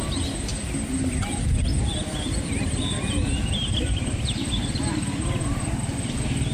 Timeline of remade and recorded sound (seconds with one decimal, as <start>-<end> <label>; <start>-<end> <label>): 0.0-1.9 recorded; 1.9-5.8 remade; 5.8-6.5 recorded